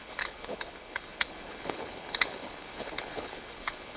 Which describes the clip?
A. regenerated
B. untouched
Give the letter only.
A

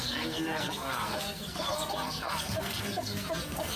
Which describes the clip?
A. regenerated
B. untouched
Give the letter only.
A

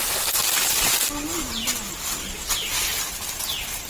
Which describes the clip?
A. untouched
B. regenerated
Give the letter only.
A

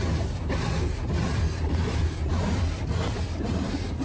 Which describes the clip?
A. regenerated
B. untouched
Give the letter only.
B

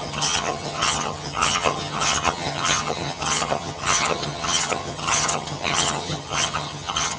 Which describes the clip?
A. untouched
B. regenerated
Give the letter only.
B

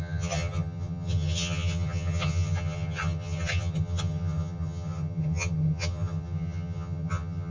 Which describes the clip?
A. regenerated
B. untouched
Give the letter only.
A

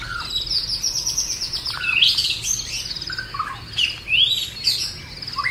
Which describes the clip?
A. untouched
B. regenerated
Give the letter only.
A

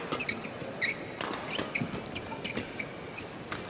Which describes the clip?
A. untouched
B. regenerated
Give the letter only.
A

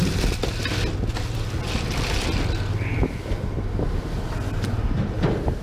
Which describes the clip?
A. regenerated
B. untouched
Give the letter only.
B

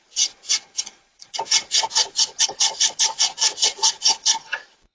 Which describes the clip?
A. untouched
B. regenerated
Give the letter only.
B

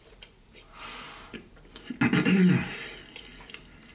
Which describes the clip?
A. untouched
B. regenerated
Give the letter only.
A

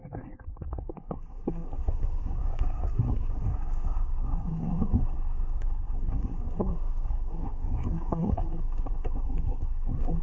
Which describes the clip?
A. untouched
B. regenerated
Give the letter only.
B